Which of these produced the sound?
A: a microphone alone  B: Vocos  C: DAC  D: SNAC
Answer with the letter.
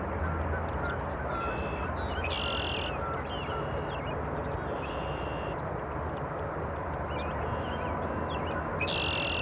A